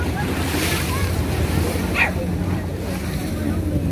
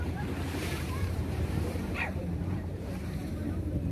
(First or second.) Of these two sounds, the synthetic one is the second